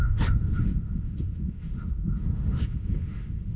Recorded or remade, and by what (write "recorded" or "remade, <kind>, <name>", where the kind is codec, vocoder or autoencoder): remade, autoencoder, DAC-VAE